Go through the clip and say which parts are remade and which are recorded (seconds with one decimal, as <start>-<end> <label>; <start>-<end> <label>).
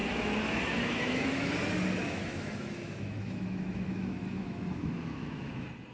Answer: 0.0-1.5 remade; 1.5-2.0 recorded; 2.0-5.5 remade; 5.5-5.9 recorded